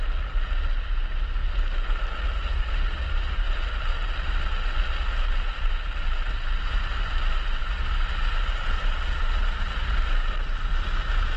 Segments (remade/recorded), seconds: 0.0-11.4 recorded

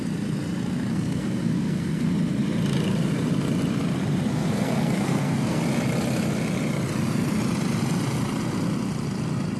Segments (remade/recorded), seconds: 0.0-0.9 recorded; 0.9-2.1 remade; 2.1-4.3 recorded; 4.3-5.6 remade; 5.6-9.6 recorded

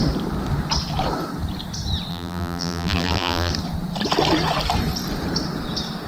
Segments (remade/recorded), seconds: 0.0-2.1 recorded; 2.1-3.5 remade; 3.5-6.1 recorded

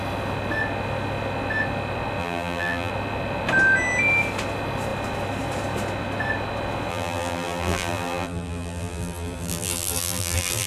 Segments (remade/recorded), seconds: 0.0-2.2 recorded; 2.2-2.9 remade; 2.9-6.9 recorded; 6.9-10.7 remade

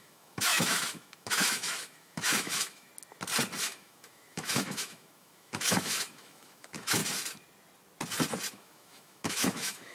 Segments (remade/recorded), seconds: 0.0-2.9 remade; 2.9-3.6 recorded; 3.6-7.0 remade; 7.0-8.5 recorded; 8.5-9.9 remade

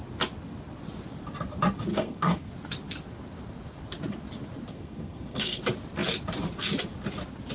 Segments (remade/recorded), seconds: 0.0-1.9 recorded; 1.9-2.5 remade; 2.5-4.7 recorded; 4.7-5.6 remade; 5.6-7.5 recorded

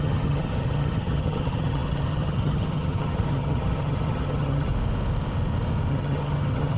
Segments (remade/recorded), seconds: 0.0-4.7 remade; 4.7-5.9 recorded; 5.9-6.8 remade

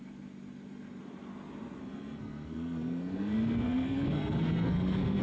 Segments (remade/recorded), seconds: 0.0-1.8 recorded; 1.8-5.2 remade